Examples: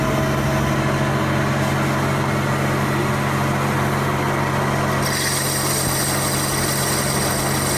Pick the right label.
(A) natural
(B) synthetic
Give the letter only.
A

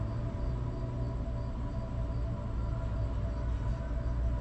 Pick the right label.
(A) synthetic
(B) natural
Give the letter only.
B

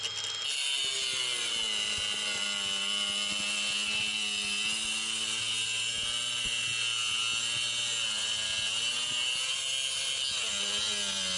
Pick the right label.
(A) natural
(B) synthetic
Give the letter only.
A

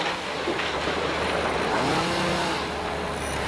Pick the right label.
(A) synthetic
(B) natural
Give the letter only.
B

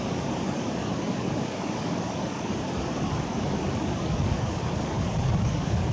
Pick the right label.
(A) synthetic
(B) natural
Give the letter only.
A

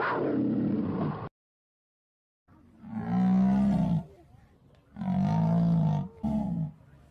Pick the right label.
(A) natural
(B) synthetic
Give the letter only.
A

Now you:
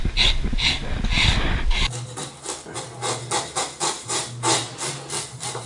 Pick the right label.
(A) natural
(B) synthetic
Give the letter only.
A